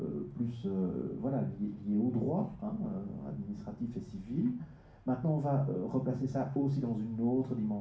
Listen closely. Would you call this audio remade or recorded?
recorded